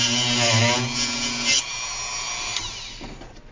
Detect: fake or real real